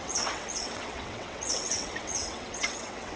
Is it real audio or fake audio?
fake